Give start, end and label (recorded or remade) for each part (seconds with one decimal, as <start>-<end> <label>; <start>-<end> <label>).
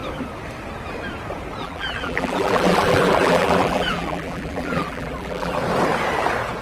0.0-1.6 recorded; 1.6-5.6 remade; 5.6-6.6 recorded